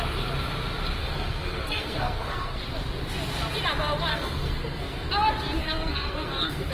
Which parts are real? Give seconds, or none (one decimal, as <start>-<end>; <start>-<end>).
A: 0.0-1.0; 2.6-4.1; 5.1-5.6